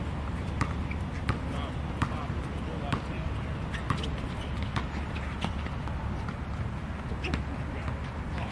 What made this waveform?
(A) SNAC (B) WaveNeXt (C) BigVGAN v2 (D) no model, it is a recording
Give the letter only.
D